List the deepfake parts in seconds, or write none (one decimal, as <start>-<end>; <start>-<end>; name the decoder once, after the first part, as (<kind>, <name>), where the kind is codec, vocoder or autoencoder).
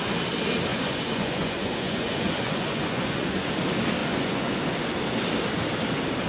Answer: 0.7-3.5 (vocoder, Vocos); 4.0-4.6